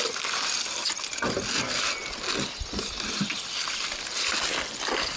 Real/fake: real